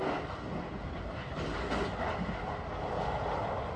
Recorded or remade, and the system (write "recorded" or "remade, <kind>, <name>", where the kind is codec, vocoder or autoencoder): recorded